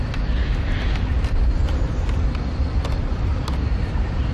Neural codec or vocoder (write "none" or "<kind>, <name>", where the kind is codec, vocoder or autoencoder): none